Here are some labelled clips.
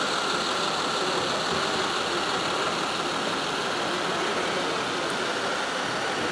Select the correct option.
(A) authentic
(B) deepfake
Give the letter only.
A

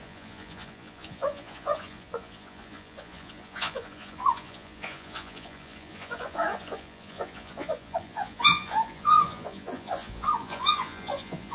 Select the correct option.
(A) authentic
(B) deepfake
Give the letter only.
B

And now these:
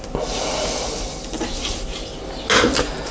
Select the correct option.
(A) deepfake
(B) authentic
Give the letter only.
B